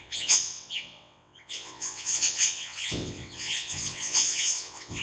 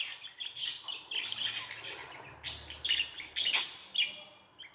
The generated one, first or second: first